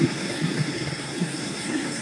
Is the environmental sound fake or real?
fake